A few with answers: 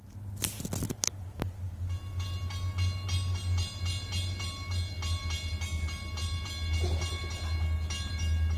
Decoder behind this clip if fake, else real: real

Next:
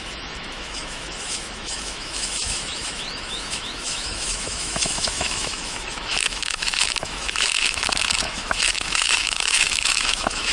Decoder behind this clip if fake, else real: fake, autoencoder, DAC-VAE